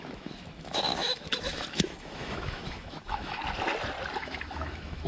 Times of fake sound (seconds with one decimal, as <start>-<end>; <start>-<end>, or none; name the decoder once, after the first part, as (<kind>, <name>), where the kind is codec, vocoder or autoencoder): 0.0-3.4 (autoencoder, DAC-VAE); 4.2-5.1